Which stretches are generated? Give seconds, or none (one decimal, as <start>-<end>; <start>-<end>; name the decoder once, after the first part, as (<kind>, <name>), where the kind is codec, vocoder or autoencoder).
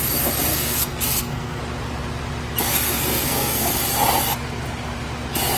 0.5-1.6 (codec, SNAC); 2.7-3.7